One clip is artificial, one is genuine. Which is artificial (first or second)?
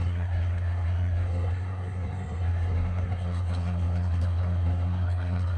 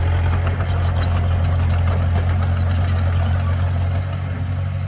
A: first